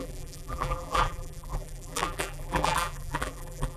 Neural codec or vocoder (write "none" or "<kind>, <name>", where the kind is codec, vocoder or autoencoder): vocoder, BigVGAN v2